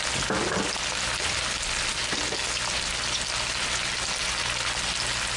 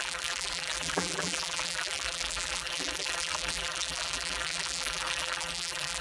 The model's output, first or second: second